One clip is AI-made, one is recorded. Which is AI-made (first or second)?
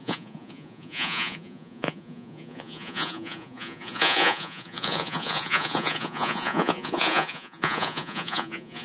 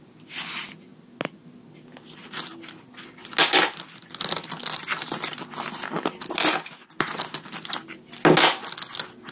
first